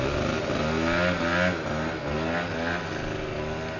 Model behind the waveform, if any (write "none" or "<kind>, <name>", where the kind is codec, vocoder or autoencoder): none